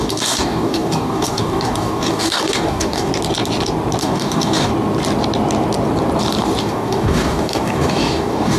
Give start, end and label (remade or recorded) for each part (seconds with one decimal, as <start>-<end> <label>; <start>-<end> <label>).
0.0-3.1 remade; 3.1-4.0 recorded; 4.0-4.7 remade; 4.7-6.6 recorded; 6.6-8.6 remade